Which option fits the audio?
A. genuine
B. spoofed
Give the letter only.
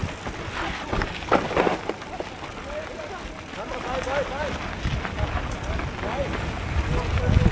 A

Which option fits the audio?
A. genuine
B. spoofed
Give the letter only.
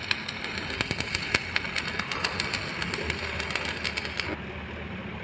A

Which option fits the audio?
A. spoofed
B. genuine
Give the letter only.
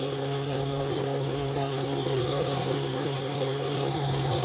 A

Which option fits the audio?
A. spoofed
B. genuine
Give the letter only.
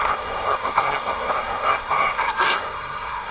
A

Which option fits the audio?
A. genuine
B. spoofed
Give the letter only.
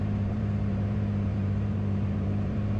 B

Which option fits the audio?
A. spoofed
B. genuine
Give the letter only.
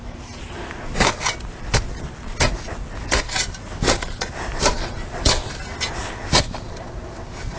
B